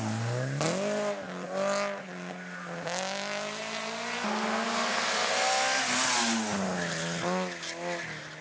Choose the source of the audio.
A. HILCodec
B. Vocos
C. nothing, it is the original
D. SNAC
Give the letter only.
C